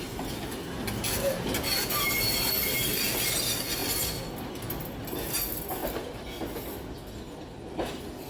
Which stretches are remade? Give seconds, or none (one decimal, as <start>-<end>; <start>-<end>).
none